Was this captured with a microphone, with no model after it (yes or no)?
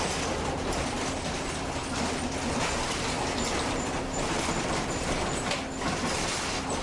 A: yes